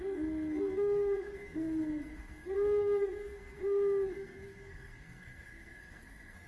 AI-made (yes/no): yes